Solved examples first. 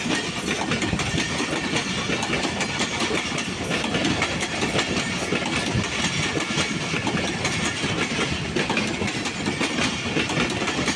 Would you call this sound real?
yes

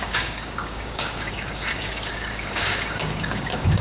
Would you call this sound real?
no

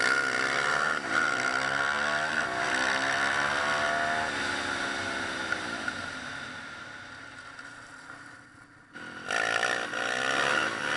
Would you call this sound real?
yes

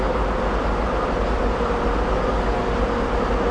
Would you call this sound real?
yes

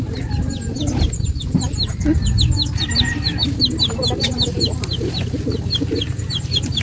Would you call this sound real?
yes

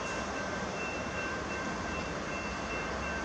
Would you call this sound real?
no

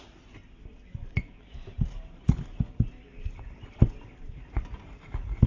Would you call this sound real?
yes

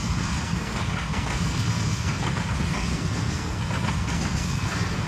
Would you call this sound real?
no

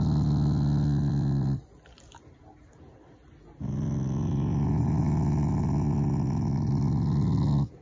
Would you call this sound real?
yes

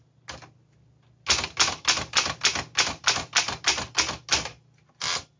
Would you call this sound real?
yes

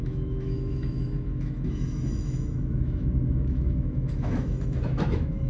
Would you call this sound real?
no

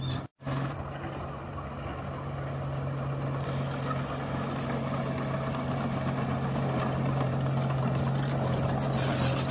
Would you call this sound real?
yes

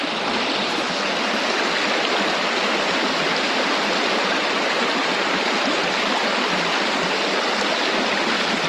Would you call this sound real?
yes